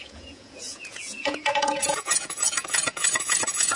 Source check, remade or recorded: remade